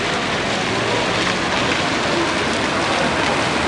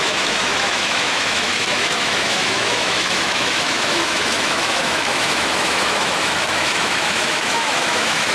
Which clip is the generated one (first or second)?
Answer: second